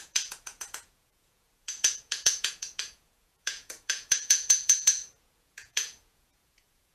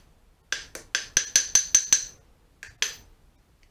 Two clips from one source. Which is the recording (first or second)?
second